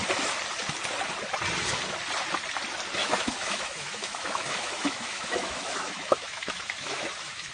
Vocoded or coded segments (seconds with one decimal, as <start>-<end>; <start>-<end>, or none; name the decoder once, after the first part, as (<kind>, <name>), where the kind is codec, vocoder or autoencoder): 3.0-7.5 (autoencoder, DAC-VAE)